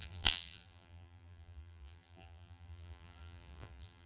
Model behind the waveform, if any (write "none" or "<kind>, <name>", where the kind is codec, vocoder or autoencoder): vocoder, BigVGAN v2